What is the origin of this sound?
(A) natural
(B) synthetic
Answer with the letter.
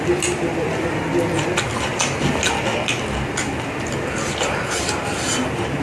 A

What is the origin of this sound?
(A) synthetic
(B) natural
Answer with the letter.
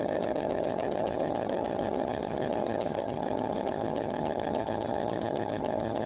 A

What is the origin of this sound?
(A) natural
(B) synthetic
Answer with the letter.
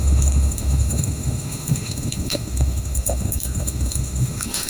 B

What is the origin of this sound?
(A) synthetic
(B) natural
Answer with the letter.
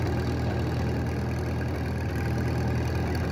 B